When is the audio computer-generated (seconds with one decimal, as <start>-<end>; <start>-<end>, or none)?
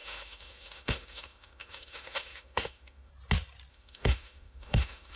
0.0-3.1; 3.7-5.2